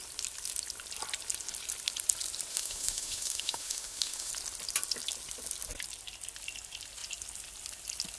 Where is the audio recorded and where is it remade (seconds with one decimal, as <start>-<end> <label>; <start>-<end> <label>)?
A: 0.0-2.5 recorded; 2.5-4.3 remade; 4.3-8.2 recorded